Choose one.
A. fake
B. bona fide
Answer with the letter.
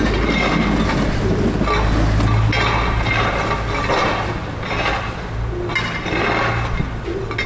B